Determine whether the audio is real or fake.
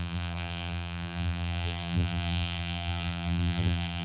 fake